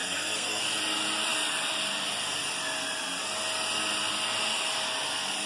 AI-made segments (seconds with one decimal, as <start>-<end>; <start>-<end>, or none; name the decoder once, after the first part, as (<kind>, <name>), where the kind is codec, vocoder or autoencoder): 0.0-0.6 (codec, SNAC)